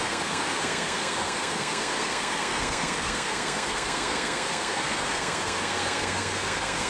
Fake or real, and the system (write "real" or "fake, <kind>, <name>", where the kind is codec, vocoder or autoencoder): fake, codec, SNAC